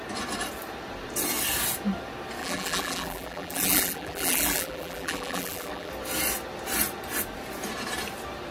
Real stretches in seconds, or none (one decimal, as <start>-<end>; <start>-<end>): 0.0-2.4; 5.9-8.5